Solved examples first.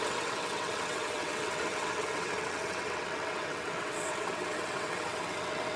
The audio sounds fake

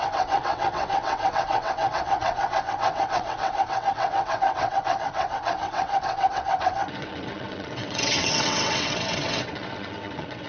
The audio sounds fake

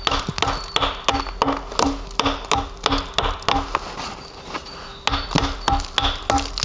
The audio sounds real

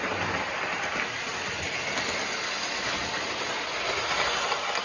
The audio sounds real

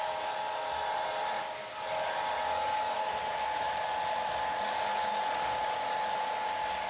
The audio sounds real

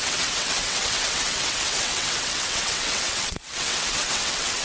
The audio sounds fake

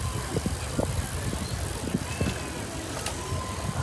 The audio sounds real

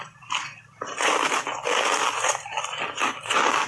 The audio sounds real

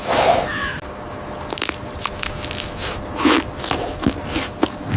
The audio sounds real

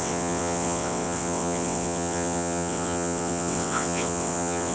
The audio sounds fake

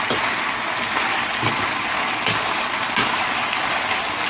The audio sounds real